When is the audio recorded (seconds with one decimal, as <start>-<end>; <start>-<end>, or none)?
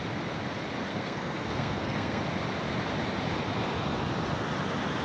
0.0-0.9; 2.2-5.0